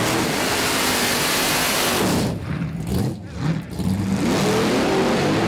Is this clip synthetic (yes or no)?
no